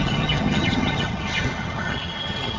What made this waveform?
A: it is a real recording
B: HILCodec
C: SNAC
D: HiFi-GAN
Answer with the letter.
D